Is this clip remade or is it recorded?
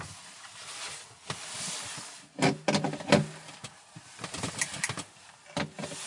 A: recorded